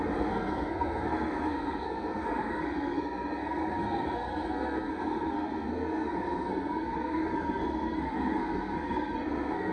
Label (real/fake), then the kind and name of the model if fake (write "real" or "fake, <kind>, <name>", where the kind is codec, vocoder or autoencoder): fake, codec, SNAC